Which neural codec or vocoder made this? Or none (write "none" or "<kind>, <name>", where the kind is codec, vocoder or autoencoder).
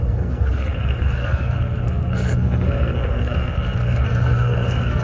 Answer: codec, SNAC